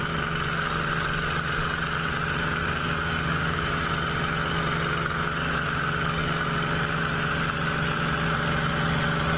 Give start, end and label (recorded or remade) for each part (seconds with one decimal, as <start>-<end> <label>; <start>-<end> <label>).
0.0-2.6 recorded; 2.6-3.7 remade; 3.7-9.4 recorded